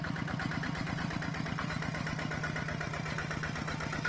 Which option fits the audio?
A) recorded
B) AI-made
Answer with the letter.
A